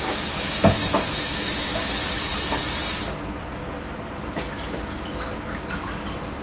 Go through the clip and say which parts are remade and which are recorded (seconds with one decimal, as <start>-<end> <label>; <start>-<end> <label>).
0.0-2.3 remade; 2.3-6.4 recorded